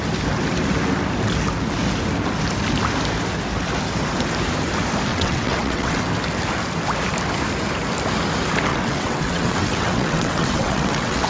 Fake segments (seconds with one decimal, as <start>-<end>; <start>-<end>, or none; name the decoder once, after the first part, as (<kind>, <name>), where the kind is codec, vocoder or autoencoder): 5.1-6.0 (vocoder, WaveNeXt); 8.7-11.3